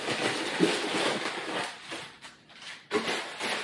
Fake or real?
real